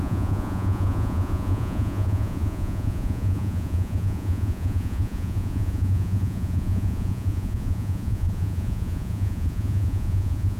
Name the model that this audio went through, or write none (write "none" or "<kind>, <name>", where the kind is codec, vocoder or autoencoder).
vocoder, Vocos